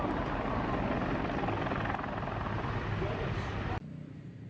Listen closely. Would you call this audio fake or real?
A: real